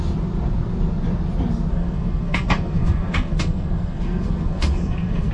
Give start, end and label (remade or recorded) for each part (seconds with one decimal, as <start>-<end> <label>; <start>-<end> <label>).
0.0-1.7 recorded; 1.7-5.3 remade